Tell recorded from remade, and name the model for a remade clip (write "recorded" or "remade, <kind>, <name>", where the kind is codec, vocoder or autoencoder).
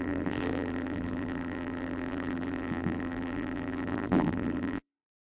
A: remade, vocoder, BigVGAN v2